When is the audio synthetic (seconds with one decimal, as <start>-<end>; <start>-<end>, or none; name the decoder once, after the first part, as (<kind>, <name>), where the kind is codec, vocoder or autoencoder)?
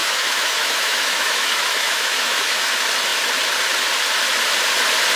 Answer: 0.0-2.7 (autoencoder, DAC-VAE)